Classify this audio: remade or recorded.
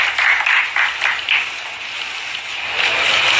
recorded